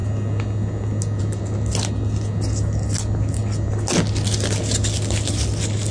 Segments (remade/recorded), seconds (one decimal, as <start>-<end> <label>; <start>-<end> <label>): 0.0-5.9 recorded